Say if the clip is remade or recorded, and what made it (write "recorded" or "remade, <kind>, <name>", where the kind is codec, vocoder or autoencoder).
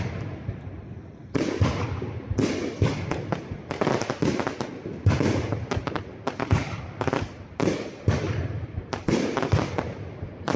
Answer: recorded